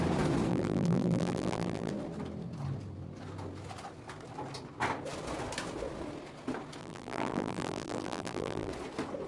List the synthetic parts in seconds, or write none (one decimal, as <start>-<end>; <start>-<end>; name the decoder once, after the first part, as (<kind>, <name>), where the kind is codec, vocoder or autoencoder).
0.5-1.9 (vocoder, BigVGAN v2); 6.8-8.7